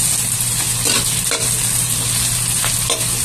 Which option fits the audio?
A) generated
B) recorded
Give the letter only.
B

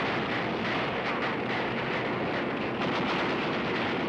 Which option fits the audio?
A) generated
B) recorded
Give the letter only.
B